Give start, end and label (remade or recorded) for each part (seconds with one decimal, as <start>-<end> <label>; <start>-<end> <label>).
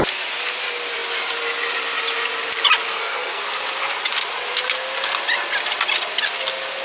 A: 0.0-2.9 recorded; 2.9-3.4 remade; 3.4-6.8 recorded